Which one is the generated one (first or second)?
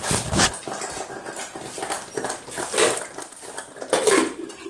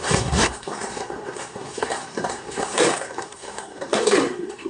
second